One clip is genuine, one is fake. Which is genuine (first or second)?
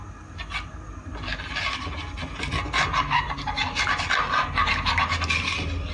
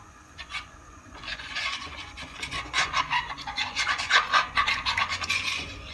first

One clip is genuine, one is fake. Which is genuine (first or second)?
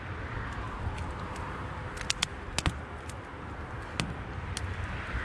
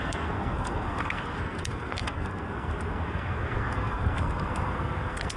first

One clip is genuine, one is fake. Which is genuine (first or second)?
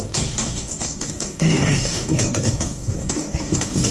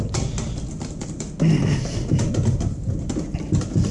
second